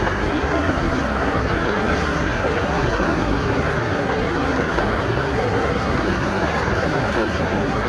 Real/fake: fake